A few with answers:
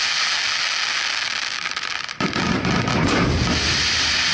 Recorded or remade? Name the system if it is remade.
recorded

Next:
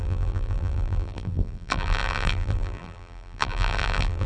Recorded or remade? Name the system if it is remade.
remade, vocoder, BigVGAN v2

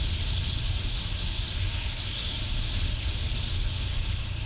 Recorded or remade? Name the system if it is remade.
recorded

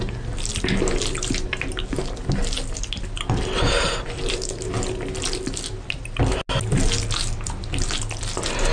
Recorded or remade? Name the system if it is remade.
recorded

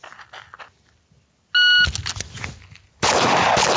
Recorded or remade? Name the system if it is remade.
recorded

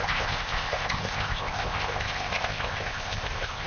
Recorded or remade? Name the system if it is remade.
remade, codec, ZipCodec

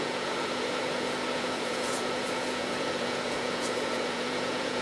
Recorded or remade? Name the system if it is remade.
remade, vocoder, Vocos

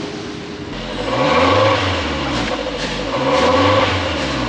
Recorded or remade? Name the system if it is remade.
remade, vocoder, BigVGAN v2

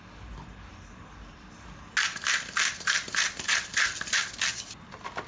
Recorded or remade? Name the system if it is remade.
recorded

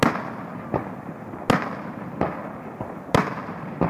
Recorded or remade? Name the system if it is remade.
recorded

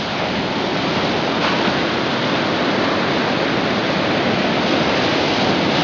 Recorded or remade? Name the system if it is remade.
recorded